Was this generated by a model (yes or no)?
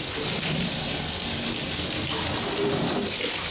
no